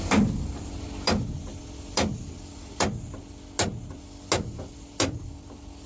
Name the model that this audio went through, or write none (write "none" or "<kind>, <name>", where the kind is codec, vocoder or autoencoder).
none